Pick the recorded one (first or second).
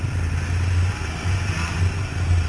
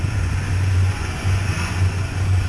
first